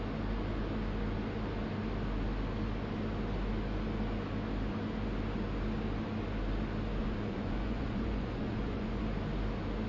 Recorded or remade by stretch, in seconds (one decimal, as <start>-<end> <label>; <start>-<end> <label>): 0.0-7.0 recorded; 7.0-9.0 remade; 9.0-9.9 recorded